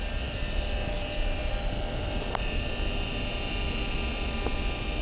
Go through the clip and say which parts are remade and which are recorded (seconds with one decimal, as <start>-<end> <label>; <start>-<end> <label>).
0.0-5.0 recorded

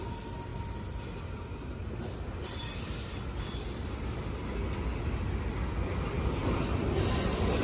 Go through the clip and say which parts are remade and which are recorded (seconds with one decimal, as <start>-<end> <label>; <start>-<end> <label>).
0.0-7.6 recorded

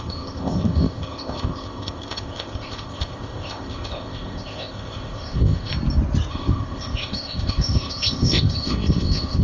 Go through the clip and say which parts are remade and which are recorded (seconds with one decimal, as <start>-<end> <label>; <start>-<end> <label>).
0.0-5.7 remade; 5.7-6.3 recorded; 6.3-9.4 remade

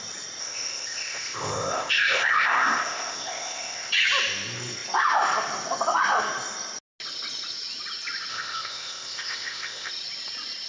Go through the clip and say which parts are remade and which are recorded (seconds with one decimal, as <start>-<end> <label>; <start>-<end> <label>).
0.0-0.4 recorded; 0.4-3.9 remade; 3.9-8.3 recorded; 8.3-9.9 remade; 9.9-10.7 recorded

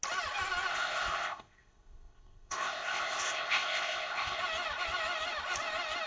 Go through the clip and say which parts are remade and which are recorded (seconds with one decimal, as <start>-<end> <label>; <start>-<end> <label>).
0.0-0.7 recorded; 0.7-4.4 remade; 4.4-6.1 recorded

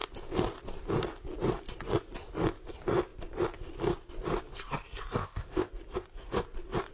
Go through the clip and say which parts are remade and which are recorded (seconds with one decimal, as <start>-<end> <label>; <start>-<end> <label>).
0.0-5.2 recorded; 5.2-5.7 remade; 5.7-6.9 recorded